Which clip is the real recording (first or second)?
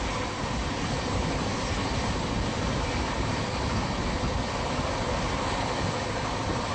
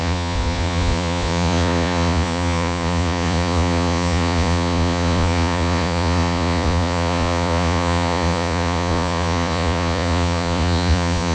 first